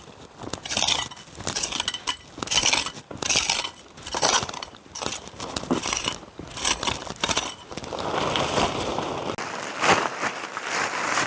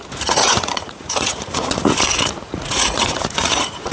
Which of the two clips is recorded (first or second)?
first